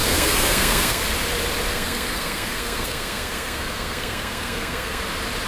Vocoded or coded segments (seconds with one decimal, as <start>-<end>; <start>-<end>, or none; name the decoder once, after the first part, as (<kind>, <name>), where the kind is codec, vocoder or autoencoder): 0.0-1.0 (codec, SNAC); 1.7-5.0